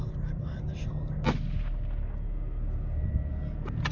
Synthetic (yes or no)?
no